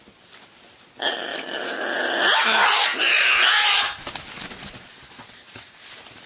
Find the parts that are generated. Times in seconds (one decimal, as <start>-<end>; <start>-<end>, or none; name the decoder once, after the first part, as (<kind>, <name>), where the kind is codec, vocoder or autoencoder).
none